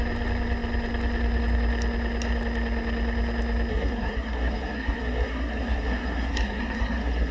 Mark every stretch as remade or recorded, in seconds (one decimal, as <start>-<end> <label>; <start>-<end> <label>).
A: 0.0-3.7 recorded; 3.7-7.3 remade